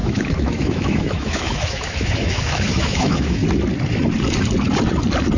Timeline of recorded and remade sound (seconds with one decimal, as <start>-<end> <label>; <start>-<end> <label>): 0.0-3.4 remade; 3.4-5.4 recorded